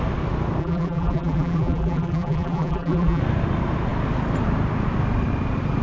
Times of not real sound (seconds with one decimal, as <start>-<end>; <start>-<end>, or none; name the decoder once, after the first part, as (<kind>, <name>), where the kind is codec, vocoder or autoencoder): 0.6-3.2 (vocoder, BigVGAN v2)